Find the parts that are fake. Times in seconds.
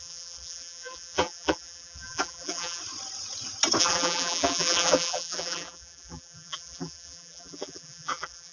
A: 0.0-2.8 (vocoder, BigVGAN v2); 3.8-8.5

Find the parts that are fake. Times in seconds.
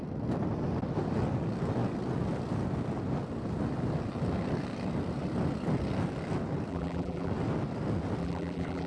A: 6.7-7.3 (vocoder, BigVGAN v2); 8.2-8.9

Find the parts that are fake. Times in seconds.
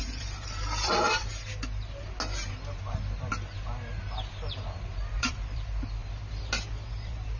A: 0.0-1.3 (vocoder, BigVGAN v2); 4.8-6.0; 6.9-7.4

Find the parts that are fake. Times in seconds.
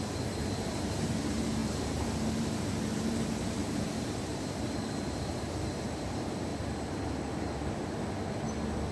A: 0.0-6.5 (vocoder, BigVGAN v2)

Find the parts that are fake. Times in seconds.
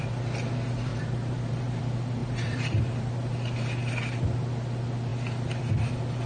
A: 0.9-1.8 (vocoder, BigVGAN v2); 2.2-2.8